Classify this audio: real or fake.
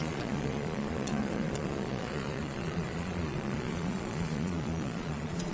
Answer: fake